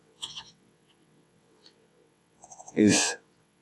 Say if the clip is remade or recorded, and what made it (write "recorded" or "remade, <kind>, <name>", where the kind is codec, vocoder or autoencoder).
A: remade, vocoder, WaveNeXt